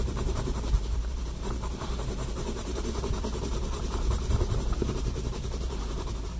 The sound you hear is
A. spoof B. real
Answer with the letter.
A